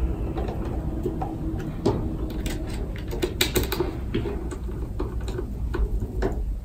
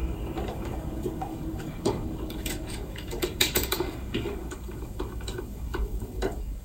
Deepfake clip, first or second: second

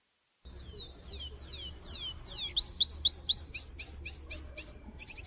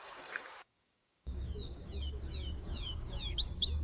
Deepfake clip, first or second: second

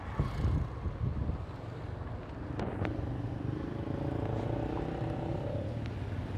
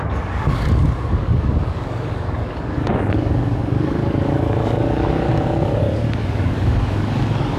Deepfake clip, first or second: second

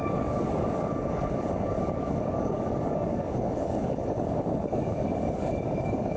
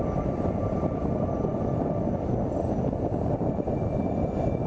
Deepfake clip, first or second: first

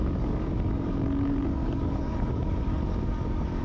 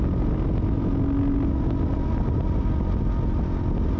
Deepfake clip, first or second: first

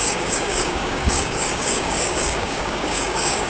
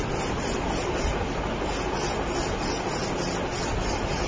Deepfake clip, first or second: first